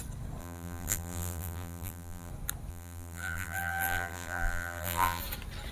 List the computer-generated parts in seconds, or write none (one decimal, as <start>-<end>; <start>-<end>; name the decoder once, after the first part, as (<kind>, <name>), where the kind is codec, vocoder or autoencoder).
0.4-2.3 (vocoder, BigVGAN v2); 2.7-5.2